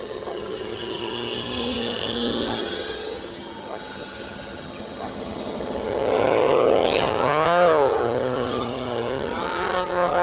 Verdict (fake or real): fake